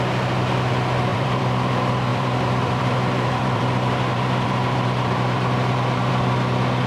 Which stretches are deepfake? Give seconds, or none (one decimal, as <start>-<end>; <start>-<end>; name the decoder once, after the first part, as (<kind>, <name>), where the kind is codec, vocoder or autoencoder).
1.1-1.7 (vocoder, BigVGAN v2); 2.1-6.1